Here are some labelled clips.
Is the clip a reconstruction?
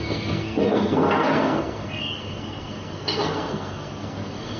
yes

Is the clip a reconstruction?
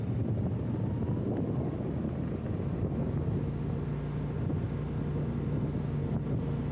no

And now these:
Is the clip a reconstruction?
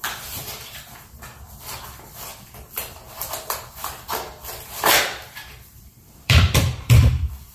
yes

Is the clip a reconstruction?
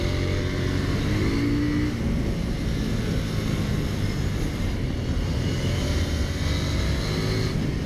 no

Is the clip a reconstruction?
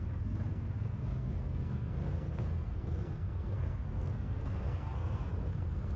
yes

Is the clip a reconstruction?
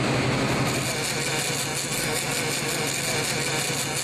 no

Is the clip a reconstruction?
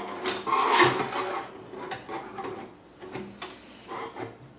no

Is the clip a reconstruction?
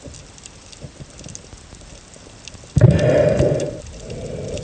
no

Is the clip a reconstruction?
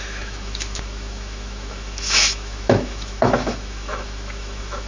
yes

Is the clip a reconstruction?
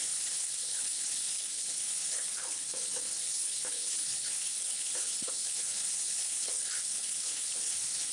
yes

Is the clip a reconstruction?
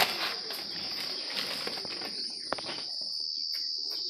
no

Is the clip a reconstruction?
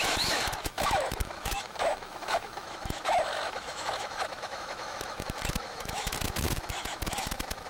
yes